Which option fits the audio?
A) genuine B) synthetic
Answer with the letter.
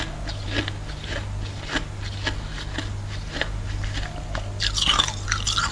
A